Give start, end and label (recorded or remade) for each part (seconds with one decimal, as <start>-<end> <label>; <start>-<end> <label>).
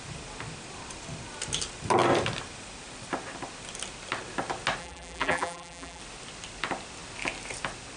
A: 0.0-4.8 recorded; 4.8-6.0 remade; 6.0-8.0 recorded